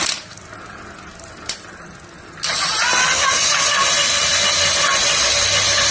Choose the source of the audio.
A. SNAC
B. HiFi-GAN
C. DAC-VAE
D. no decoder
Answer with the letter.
D